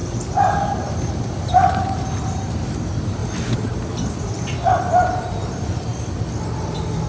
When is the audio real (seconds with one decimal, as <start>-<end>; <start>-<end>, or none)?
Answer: 3.2-4.8; 5.9-7.1